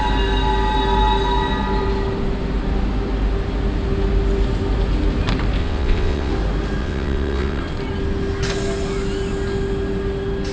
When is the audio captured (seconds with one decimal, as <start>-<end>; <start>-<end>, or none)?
0.0-5.6; 6.3-6.8; 7.6-10.5